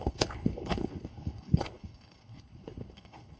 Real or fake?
fake